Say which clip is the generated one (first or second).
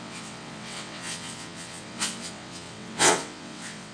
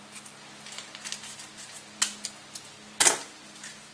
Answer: first